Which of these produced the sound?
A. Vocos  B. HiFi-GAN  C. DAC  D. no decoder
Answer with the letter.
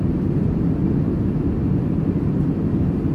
D